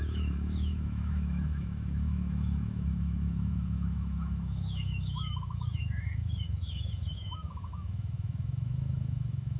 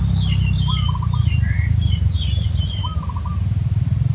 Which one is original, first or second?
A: second